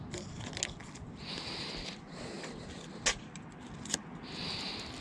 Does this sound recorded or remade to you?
recorded